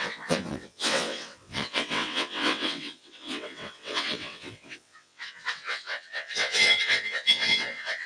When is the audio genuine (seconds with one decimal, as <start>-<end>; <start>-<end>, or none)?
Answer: none